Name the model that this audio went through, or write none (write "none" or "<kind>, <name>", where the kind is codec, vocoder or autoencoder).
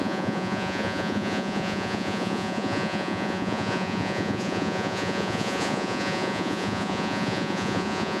vocoder, Vocos